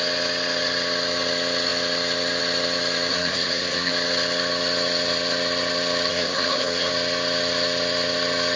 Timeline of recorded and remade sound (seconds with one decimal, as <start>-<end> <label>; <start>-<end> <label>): 0.0-3.1 recorded; 3.1-3.9 remade; 3.9-6.1 recorded; 6.1-6.9 remade; 6.9-8.6 recorded